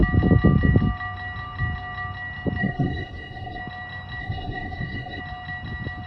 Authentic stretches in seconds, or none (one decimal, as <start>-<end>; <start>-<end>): 0.0-2.6; 3.6-4.2; 5.2-6.1

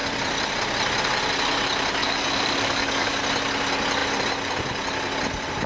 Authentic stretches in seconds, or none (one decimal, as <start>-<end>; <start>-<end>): 0.0-2.0; 3.2-5.7

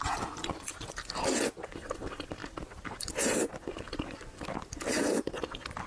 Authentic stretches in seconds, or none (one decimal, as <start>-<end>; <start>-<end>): 0.0-5.9

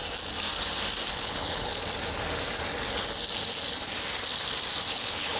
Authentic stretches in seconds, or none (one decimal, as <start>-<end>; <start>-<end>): 0.0-1.1; 1.7-4.9

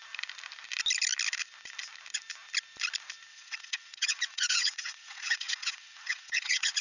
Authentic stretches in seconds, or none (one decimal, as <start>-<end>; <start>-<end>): 0.0-3.3

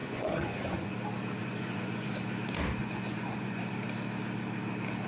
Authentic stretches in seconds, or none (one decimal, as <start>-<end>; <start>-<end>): 0.9-1.4; 2.1-2.8; 3.7-5.1

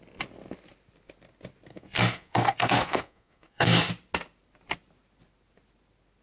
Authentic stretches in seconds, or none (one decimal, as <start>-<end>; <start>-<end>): 0.0-1.7; 3.9-6.2